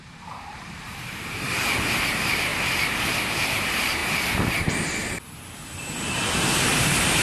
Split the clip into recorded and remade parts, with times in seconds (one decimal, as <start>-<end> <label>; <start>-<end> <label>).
0.0-4.0 remade; 4.0-6.8 recorded; 6.8-7.2 remade